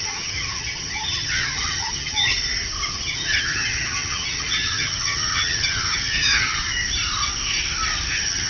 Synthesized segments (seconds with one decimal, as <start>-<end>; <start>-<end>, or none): 0.0-2.3; 2.9-6.6; 8.1-8.5